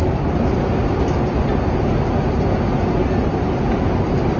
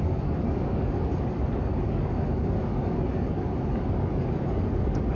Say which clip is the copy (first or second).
second